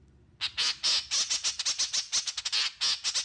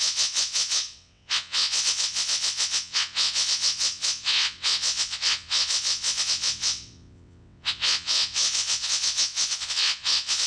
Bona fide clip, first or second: first